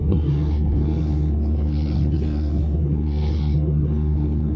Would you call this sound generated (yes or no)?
yes